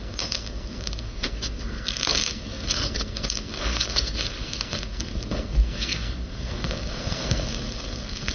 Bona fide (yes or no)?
no